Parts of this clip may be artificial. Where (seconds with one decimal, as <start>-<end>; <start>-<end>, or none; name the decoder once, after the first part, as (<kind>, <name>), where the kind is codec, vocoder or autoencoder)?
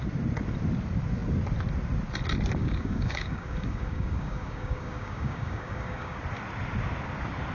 2.6-6.2 (codec, DAC)